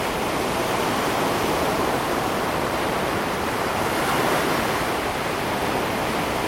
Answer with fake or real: fake